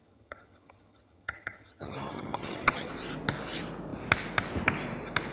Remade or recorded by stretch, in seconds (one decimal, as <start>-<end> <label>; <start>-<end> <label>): 0.0-2.9 remade; 2.9-5.3 recorded